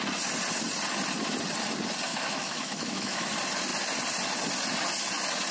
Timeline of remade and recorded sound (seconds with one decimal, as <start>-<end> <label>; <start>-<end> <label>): 0.0-2.1 recorded; 2.1-3.3 remade; 3.3-5.5 recorded

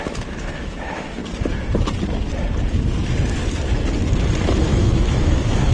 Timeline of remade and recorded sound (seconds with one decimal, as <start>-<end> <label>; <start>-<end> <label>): 0.0-1.2 remade; 1.2-4.6 recorded; 4.6-5.7 remade

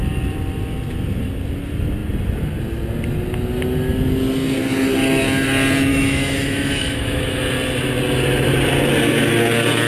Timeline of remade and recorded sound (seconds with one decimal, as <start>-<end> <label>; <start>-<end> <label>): 0.0-5.9 recorded; 5.9-7.4 remade; 7.4-9.9 recorded

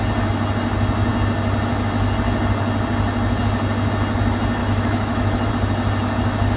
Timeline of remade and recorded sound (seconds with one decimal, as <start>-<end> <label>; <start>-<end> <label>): 0.0-4.6 recorded; 4.6-5.5 remade; 5.5-6.6 recorded

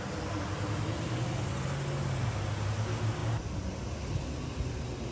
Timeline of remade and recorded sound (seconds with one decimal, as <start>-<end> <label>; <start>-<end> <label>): 0.0-5.1 recorded